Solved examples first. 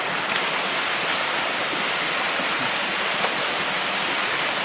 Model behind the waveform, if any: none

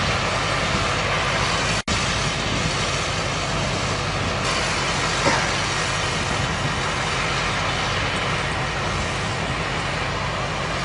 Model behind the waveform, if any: none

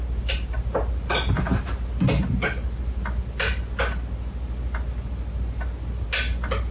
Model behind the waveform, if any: none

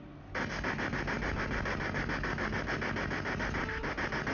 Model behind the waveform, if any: none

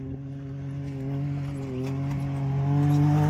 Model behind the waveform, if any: none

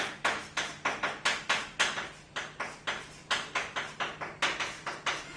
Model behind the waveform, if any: none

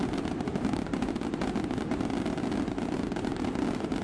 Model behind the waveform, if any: none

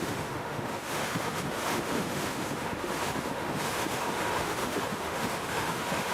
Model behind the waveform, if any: autoencoder, DAC-VAE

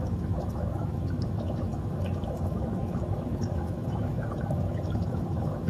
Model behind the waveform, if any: autoencoder, DAC-VAE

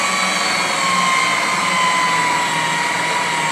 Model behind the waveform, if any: none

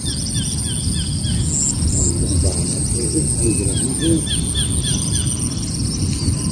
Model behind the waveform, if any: none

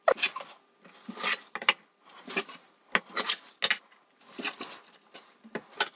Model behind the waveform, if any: none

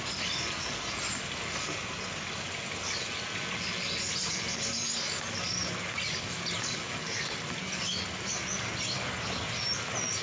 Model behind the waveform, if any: none